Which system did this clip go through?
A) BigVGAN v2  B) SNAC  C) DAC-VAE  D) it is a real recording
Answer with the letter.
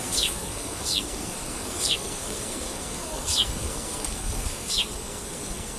B